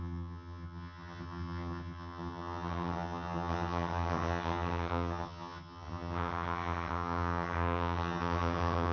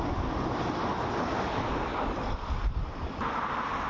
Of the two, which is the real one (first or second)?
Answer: second